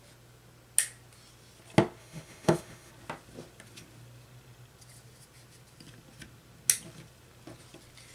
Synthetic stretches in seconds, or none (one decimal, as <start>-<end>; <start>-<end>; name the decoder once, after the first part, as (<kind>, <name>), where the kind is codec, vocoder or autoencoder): 2.0-2.9 (autoencoder, DAC-VAE)